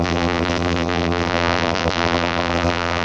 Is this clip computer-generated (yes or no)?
yes